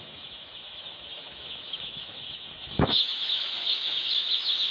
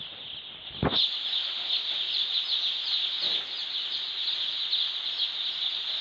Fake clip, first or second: first